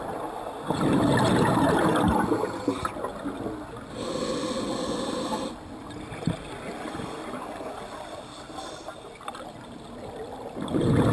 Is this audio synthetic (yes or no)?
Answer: no